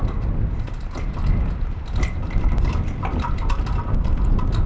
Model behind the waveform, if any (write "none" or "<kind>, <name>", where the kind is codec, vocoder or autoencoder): vocoder, BigVGAN v2